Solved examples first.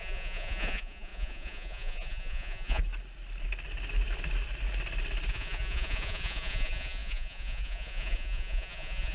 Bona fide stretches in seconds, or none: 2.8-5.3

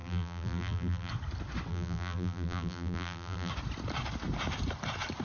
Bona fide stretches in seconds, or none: 1.1-1.7; 3.5-5.2

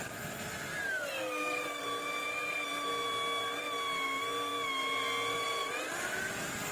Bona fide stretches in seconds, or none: 0.0-0.7; 1.8-6.7

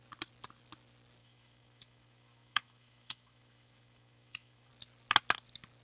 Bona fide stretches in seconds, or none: 0.0-1.2; 4.7-5.8

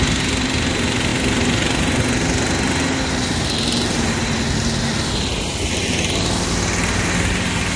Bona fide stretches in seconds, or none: 0.0-7.8